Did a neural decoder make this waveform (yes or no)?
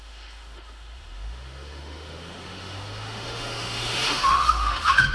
yes